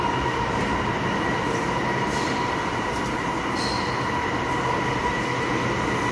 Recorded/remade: recorded